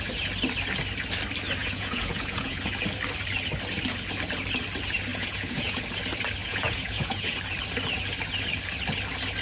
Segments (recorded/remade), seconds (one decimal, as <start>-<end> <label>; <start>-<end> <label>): 0.0-1.6 recorded; 1.6-2.6 remade; 2.6-5.1 recorded; 5.1-5.8 remade; 5.8-6.4 recorded; 6.4-7.4 remade; 7.4-9.4 recorded